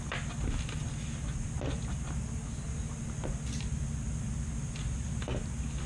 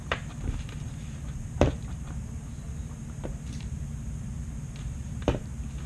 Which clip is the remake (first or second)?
second